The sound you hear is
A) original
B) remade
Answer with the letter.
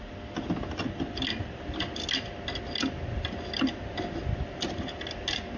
A